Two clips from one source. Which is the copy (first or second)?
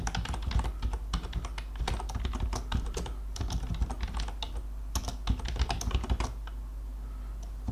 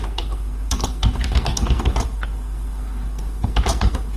second